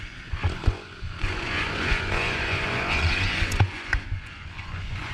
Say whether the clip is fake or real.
fake